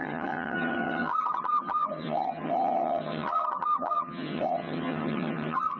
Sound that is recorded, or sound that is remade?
remade